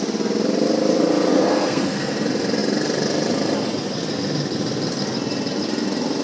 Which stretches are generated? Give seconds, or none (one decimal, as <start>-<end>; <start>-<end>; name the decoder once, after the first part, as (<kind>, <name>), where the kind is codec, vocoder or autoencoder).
1.3-2.1 (codec, SNAC)